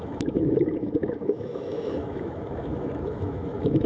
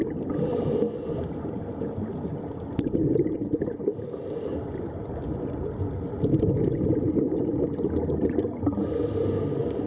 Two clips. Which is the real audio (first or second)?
second